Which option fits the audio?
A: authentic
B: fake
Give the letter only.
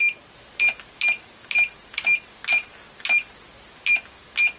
A